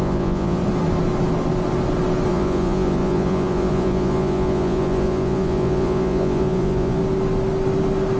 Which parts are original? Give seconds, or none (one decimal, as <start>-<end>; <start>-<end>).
0.6-2.3; 7.0-8.2